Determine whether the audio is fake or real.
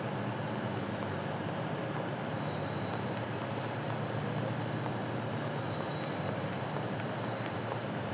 real